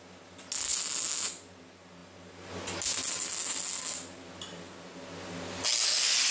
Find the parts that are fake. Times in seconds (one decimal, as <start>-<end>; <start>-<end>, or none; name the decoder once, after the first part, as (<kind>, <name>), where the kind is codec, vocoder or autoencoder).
none